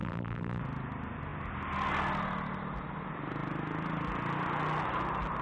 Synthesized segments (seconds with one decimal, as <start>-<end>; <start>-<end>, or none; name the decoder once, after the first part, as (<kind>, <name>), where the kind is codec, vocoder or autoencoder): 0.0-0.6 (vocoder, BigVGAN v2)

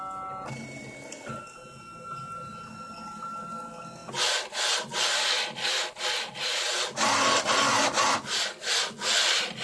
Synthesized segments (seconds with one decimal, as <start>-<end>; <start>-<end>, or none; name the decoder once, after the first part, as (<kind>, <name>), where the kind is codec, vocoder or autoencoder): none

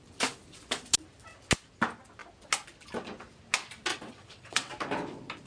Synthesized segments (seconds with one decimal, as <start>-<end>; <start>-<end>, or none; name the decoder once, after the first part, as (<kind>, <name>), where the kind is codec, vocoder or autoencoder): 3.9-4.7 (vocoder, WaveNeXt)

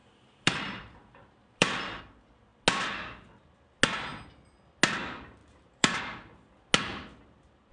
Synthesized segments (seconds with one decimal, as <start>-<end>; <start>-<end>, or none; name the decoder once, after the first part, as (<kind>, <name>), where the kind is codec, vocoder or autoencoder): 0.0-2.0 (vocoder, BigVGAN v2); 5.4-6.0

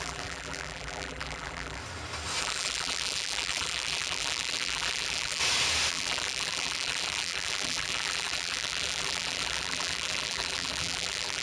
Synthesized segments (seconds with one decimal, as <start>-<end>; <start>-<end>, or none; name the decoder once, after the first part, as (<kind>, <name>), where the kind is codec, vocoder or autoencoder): 0.0-1.8 (vocoder, BigVGAN v2); 2.4-5.4; 5.9-11.4

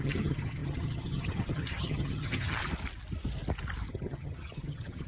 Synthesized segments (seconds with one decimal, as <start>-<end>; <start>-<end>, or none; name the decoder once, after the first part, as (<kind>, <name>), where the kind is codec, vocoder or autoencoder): 0.0-2.6 (vocoder, HiFi-GAN); 3.9-5.1